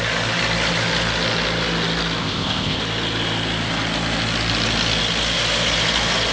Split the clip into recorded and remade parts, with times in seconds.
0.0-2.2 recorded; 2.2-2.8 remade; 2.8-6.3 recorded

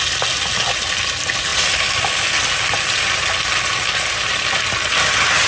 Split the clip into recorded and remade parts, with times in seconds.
0.0-5.5 recorded